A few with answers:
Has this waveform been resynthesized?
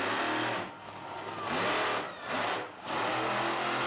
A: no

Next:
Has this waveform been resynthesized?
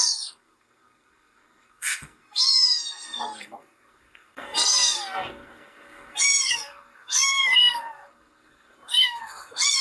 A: yes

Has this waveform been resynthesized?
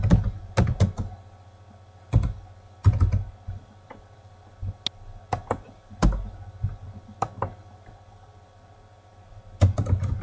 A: no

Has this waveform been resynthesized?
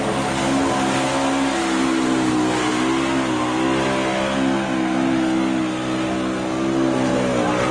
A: no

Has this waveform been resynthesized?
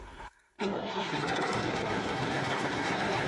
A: yes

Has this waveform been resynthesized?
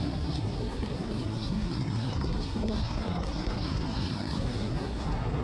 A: yes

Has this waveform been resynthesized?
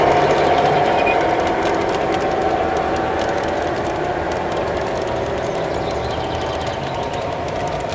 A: no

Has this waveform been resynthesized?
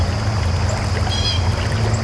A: no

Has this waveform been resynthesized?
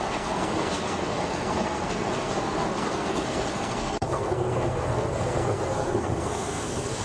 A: yes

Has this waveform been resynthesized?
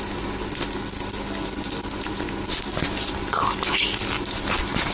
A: no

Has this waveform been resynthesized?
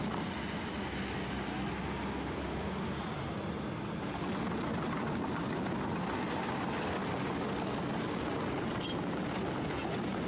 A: no